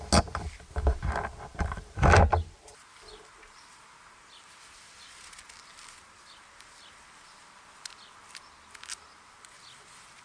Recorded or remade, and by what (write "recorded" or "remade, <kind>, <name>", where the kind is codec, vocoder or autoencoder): recorded